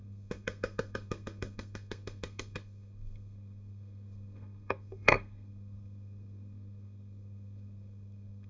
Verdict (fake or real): fake